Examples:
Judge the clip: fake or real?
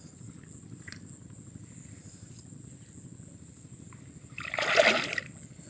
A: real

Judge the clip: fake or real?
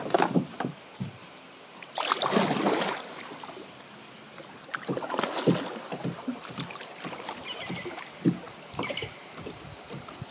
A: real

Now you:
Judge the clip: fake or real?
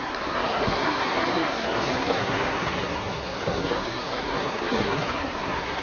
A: fake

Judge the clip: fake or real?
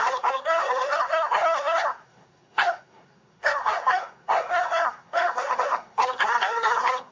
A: fake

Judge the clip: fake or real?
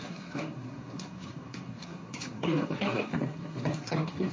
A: fake